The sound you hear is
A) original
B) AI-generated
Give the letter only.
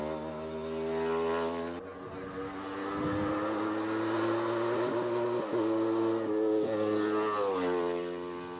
A